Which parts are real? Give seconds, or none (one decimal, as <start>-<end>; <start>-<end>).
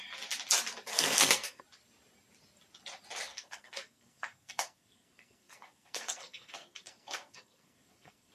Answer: 0.0-0.9; 1.6-3.3